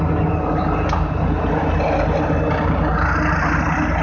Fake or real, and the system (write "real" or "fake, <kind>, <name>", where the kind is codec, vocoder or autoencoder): real